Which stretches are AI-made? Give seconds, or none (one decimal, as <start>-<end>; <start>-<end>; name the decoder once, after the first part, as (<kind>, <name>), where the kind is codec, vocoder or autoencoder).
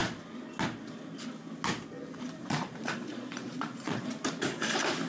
2.4-4.1 (vocoder, Vocos)